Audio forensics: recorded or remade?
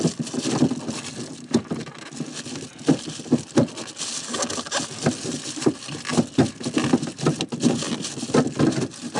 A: recorded